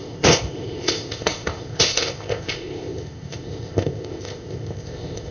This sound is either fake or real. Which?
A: fake